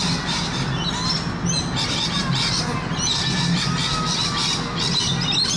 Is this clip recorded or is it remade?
recorded